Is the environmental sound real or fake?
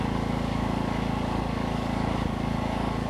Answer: fake